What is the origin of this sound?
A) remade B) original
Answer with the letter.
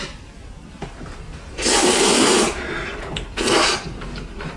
A